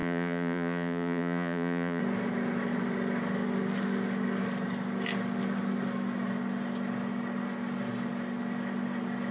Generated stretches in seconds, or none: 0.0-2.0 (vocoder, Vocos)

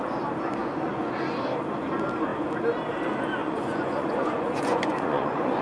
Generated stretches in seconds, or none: 0.6-1.1 (vocoder, Vocos); 3.4-5.6

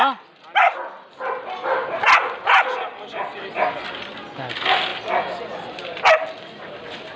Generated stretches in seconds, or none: none

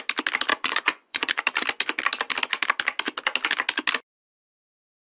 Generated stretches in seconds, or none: 0.5-1.4 (vocoder, Vocos)